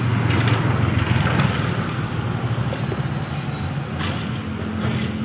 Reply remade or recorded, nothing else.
recorded